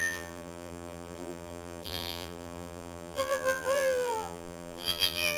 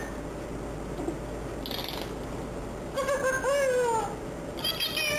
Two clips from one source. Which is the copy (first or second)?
first